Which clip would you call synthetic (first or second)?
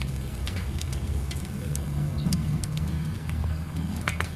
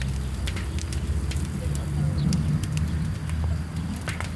first